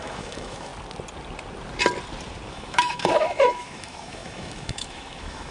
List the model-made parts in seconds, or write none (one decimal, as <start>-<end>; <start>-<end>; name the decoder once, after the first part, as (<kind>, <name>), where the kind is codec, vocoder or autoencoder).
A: 0.0-0.7 (autoencoder, DAC-VAE); 2.5-5.5